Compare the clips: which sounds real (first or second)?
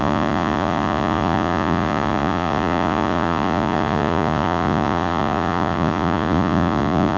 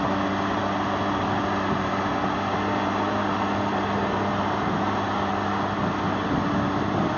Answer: second